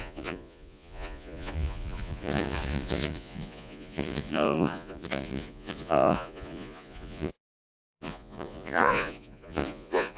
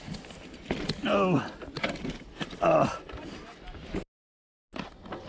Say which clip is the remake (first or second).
first